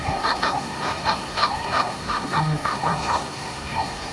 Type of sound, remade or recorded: remade